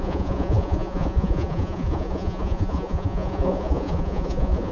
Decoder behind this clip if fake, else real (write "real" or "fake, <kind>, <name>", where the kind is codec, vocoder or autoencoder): fake, vocoder, Vocos